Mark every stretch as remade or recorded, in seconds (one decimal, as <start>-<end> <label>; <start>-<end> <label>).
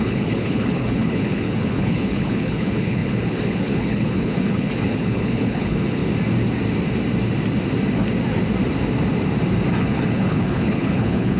0.0-6.0 remade; 6.0-9.8 recorded; 9.8-11.4 remade